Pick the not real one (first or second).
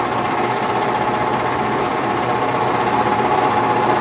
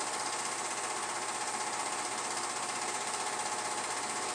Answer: first